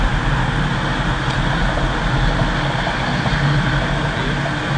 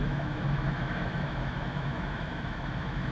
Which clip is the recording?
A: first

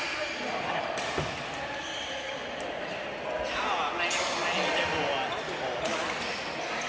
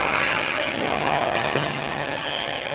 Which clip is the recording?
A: first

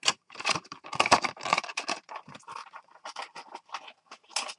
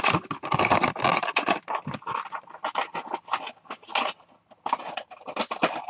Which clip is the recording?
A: second